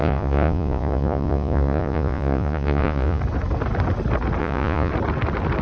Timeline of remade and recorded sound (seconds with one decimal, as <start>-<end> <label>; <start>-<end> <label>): 0.0-3.2 remade; 3.2-4.4 recorded; 4.4-4.9 remade; 4.9-5.6 recorded